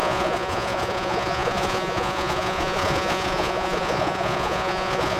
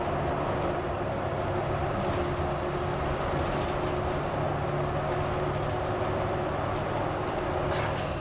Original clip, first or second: second